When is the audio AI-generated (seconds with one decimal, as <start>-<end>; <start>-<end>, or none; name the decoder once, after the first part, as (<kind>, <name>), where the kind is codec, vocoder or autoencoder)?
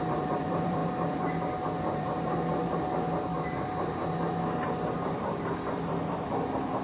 0.0-0.8 (vocoder, BigVGAN v2); 4.9-6.8